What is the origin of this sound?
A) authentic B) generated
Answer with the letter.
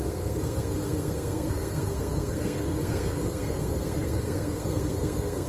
B